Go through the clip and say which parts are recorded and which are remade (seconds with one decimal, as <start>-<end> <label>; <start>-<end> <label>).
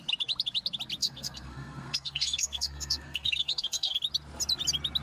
0.0-1.0 recorded; 1.0-4.0 remade; 4.0-5.0 recorded